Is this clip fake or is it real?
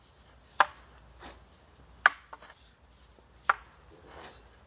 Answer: real